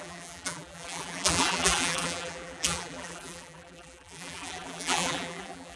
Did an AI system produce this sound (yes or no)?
yes